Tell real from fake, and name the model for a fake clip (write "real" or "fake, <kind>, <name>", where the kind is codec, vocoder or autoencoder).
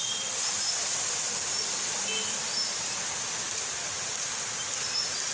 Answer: real